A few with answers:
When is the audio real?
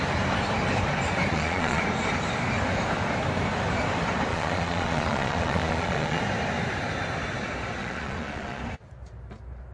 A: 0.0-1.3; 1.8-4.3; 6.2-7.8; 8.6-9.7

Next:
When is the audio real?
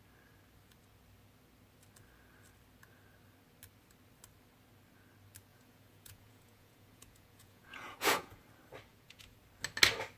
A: 0.0-5.5; 8.4-8.9; 9.4-10.2